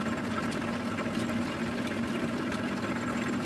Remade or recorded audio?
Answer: recorded